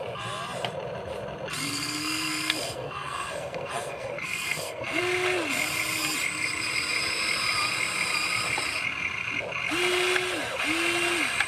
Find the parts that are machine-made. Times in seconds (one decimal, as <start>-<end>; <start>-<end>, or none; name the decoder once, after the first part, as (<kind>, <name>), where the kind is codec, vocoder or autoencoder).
1.6-5.0 (codec, SNAC)